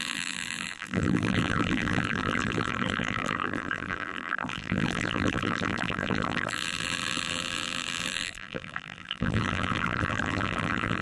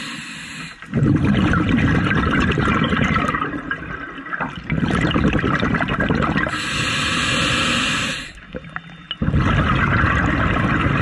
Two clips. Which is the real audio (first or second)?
second